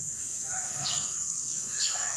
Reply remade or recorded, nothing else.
remade